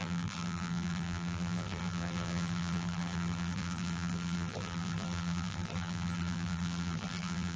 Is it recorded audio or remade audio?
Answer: remade